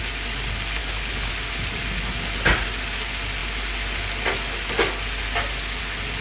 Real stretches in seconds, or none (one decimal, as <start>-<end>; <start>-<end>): 0.0-0.8; 1.3-6.2